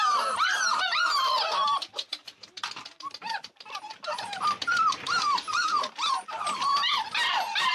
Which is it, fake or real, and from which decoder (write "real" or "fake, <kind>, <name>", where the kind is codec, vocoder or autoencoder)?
fake, vocoder, BigVGAN v2